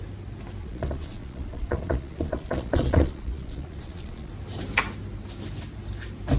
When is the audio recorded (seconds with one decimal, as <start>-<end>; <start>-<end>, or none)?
0.0-0.6; 4.3-6.4